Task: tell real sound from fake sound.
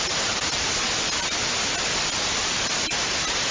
real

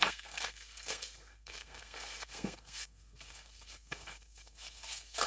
fake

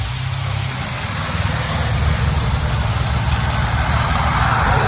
real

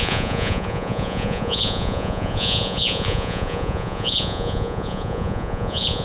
fake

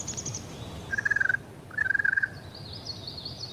real